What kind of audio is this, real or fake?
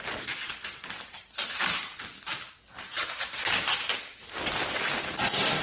real